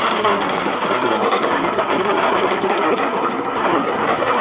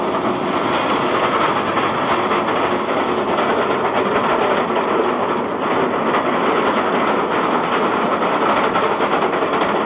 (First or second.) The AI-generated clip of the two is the first